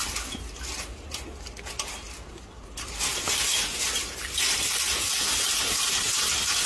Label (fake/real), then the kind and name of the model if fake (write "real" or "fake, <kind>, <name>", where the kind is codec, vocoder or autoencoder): real